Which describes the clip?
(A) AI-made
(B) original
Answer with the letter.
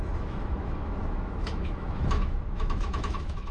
A